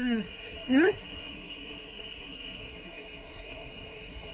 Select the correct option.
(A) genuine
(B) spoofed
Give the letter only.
B